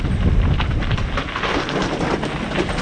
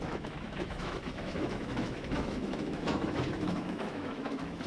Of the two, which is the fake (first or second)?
second